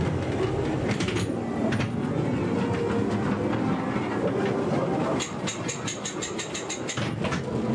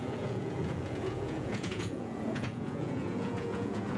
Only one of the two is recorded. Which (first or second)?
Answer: first